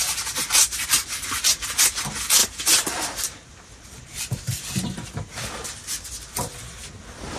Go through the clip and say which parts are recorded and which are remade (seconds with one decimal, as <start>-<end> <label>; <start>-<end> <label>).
0.0-2.4 recorded; 2.4-5.3 remade; 5.3-7.4 recorded